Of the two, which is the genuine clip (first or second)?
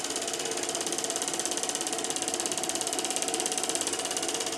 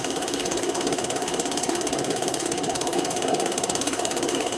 first